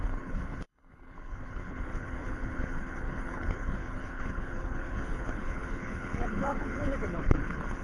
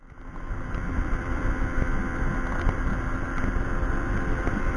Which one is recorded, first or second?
second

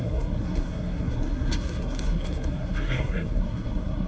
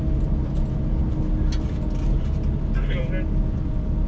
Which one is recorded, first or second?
second